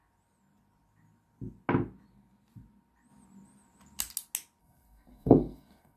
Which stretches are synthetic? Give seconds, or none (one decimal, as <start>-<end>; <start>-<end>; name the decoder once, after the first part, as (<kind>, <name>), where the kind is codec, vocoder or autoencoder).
4.6-6.0 (codec, SNAC)